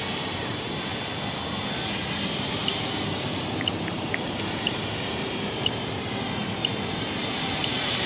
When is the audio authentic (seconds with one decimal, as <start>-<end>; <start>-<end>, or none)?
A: 0.9-1.9

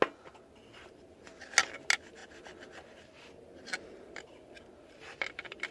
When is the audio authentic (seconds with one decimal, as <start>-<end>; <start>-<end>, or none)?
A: 0.0-5.7

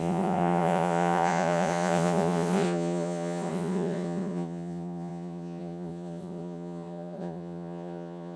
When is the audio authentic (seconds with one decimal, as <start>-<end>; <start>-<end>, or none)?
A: none

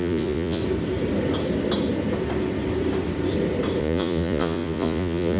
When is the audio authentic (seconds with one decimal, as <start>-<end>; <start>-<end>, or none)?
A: 0.6-3.8

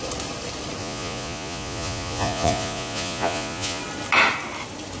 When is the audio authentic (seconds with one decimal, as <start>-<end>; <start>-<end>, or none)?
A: 0.0-0.8; 3.8-5.0

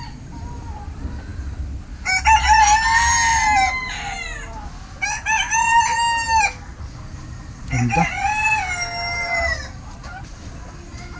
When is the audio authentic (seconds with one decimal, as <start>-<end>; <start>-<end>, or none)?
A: 0.0-11.2

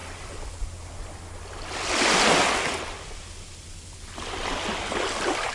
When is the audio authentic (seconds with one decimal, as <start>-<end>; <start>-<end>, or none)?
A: 0.0-5.5

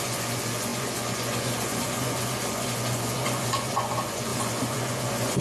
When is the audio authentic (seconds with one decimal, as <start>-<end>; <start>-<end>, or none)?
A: none